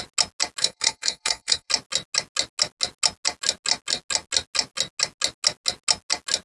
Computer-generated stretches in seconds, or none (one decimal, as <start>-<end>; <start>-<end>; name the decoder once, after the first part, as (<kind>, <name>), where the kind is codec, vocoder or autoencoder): 0.6-1.7 (codec, SNAC)